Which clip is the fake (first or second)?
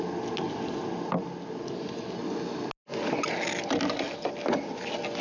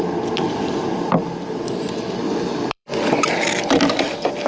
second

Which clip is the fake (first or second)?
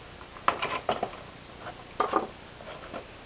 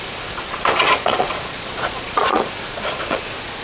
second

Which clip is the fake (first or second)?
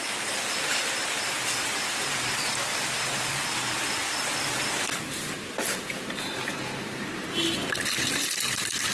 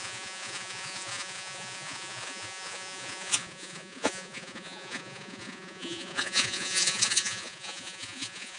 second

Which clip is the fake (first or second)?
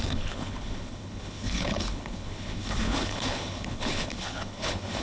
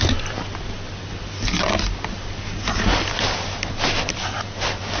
first